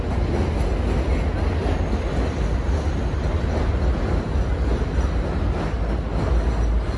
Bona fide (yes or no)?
yes